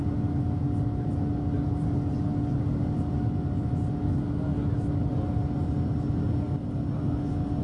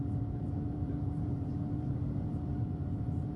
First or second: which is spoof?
second